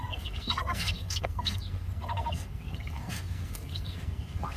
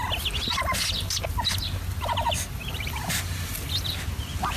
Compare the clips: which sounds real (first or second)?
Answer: second